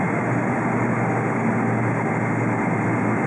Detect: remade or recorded recorded